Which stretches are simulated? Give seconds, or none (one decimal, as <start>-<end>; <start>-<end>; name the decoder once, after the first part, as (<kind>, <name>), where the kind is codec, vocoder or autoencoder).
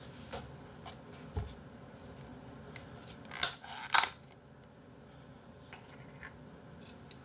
5.3-6.5 (vocoder, BigVGAN v2)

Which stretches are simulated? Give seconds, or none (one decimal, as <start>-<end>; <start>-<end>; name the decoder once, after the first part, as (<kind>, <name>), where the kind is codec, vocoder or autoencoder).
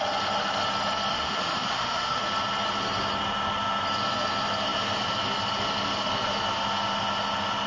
1.1-2.2 (autoencoder, DAC-VAE)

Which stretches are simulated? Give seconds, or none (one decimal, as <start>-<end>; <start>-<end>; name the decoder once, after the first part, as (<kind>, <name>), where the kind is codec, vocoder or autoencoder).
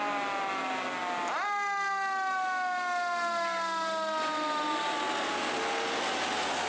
none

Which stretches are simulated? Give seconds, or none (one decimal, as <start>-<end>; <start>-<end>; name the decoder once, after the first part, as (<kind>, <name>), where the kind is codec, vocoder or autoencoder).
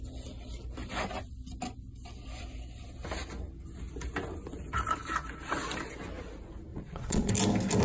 6.7-7.3 (vocoder, Vocos)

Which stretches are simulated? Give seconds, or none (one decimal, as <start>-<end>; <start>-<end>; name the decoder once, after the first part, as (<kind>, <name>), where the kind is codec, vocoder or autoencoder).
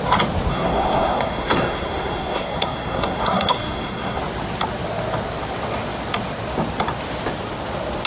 0.5-4.2 (codec, SNAC)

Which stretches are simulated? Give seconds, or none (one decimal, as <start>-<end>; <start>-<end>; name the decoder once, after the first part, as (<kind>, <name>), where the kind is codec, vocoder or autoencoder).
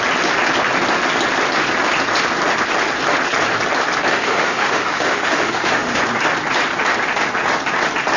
4.1-6.0 (autoencoder, DAC-VAE)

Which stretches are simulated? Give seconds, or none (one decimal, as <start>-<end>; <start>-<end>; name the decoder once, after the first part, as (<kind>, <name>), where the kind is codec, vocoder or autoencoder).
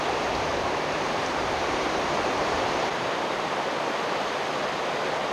0.5-3.7 (vocoder, BigVGAN v2)